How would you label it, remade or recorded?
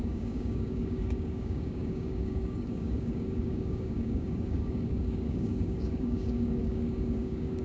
remade